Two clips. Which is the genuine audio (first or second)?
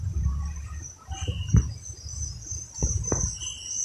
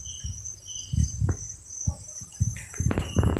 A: second